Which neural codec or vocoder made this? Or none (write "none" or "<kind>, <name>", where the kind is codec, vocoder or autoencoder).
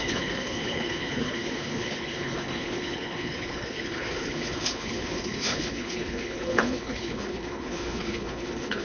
codec, HILCodec